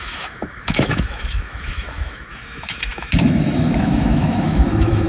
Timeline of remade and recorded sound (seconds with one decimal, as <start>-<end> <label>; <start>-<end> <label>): 0.0-5.1 remade